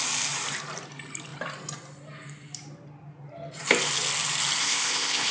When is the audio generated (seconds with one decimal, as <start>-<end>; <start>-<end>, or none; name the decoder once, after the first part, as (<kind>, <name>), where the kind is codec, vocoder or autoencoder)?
4.6-5.3 (codec, ZipCodec)